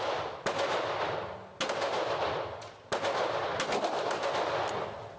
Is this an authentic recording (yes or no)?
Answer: yes